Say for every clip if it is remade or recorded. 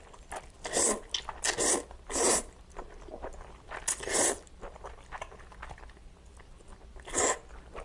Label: recorded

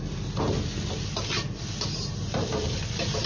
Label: recorded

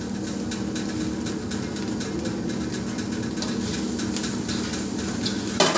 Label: recorded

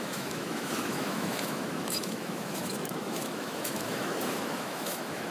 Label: remade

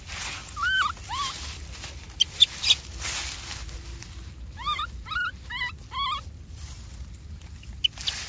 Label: recorded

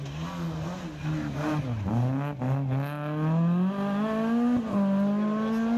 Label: recorded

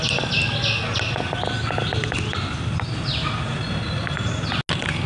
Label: recorded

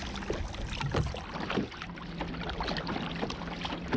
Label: recorded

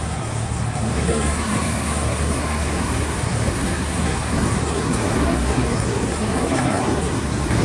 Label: remade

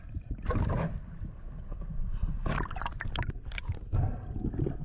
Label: recorded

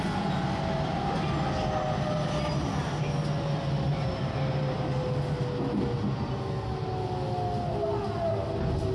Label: recorded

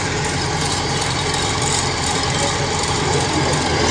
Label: remade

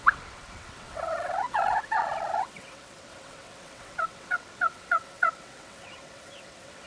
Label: remade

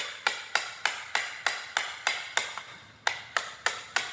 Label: recorded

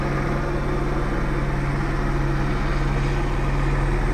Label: recorded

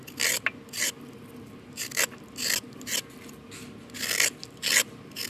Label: recorded